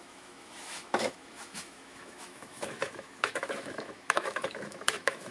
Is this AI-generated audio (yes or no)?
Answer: yes